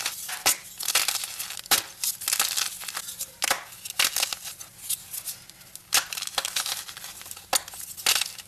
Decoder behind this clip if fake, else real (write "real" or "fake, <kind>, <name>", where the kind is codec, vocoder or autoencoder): real